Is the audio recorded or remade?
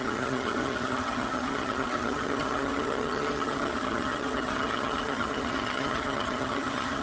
remade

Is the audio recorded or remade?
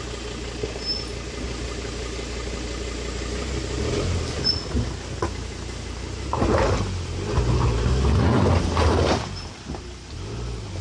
recorded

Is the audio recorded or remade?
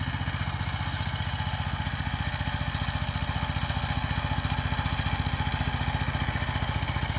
recorded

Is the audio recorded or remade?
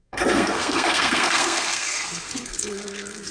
remade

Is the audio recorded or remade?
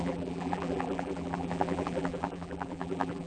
remade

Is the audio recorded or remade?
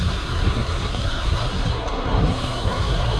remade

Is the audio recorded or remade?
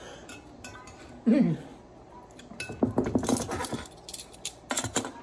recorded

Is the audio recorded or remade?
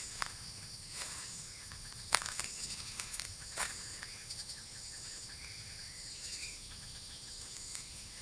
remade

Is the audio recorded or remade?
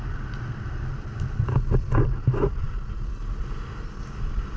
recorded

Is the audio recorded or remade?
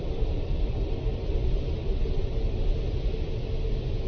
recorded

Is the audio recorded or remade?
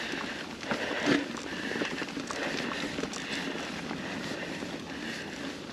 recorded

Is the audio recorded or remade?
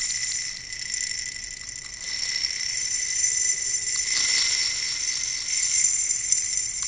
recorded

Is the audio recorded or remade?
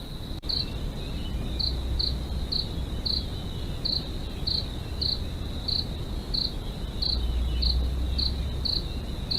recorded